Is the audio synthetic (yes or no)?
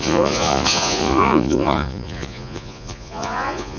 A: yes